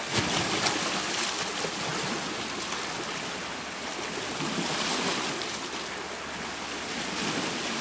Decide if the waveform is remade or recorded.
recorded